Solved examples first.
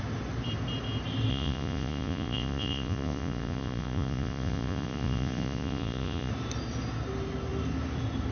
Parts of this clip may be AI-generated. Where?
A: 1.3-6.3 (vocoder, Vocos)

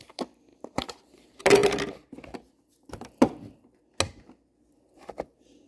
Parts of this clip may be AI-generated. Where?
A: 0.5-1.1 (vocoder, BigVGAN v2)